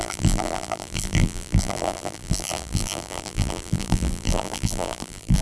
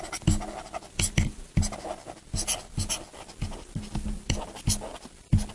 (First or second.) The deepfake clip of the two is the first